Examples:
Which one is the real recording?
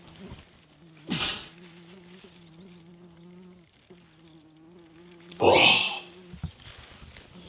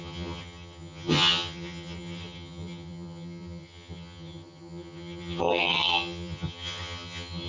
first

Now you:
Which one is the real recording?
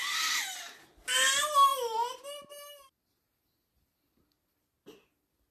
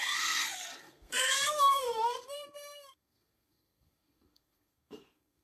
first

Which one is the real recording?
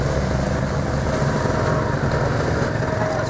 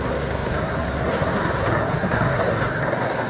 first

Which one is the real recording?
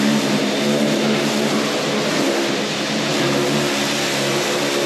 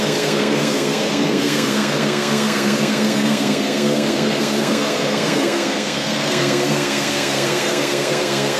first